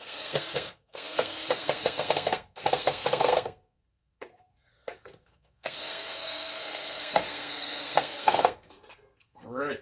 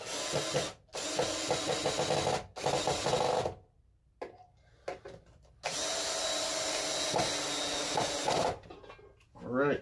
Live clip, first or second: second